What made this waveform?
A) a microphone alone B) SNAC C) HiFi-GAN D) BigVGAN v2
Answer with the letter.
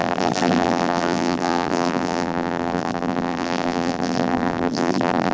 D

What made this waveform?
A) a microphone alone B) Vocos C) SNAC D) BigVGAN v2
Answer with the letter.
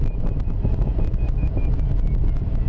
D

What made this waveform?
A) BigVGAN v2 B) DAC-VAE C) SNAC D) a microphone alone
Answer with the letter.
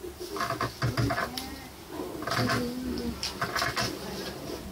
D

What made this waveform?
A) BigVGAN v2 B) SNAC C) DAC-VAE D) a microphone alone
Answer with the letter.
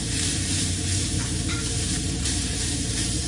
A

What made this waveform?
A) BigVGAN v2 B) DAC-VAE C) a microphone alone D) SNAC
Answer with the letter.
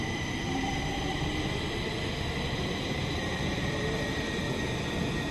A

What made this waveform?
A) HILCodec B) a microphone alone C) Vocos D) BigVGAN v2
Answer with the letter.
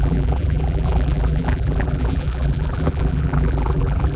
D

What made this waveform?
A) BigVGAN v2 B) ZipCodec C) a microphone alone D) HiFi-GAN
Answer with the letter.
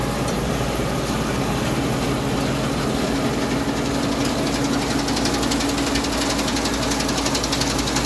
C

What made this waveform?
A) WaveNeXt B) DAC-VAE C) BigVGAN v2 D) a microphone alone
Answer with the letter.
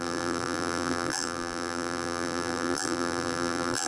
C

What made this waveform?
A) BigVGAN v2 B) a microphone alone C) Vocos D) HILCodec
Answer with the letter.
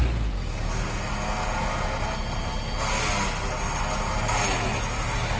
B